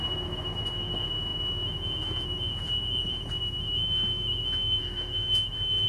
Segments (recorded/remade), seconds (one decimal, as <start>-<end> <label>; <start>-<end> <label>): 0.0-5.9 remade